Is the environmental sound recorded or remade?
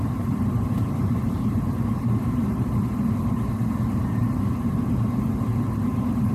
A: remade